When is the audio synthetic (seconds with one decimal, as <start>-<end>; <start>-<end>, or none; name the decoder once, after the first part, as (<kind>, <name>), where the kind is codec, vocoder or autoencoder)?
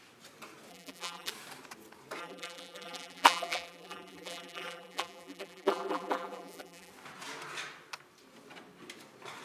0.7-1.3 (vocoder, BigVGAN v2); 2.2-6.9